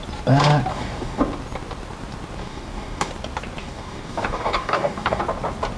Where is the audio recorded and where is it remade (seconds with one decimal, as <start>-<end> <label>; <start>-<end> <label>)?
0.0-0.7 recorded; 0.7-1.2 remade; 1.2-2.4 recorded; 2.4-3.1 remade; 3.1-3.6 recorded; 3.6-5.2 remade; 5.2-5.8 recorded